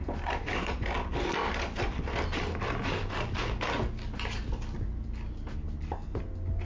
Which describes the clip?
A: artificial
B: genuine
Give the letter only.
B